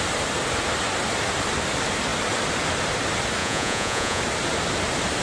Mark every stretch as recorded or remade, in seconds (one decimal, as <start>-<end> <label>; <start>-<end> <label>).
0.0-3.4 recorded; 3.4-4.2 remade; 4.2-5.2 recorded